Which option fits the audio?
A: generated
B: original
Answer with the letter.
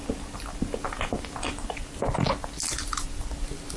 B